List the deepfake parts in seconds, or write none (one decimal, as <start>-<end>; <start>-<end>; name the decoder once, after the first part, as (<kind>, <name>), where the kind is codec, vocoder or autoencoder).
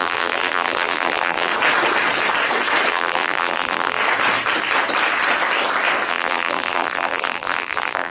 0.0-1.5 (vocoder, BigVGAN v2); 2.9-4.0; 6.1-8.1